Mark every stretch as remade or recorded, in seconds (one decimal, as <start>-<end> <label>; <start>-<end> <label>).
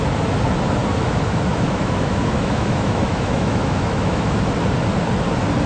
0.0-1.0 recorded; 1.0-4.4 remade; 4.4-5.7 recorded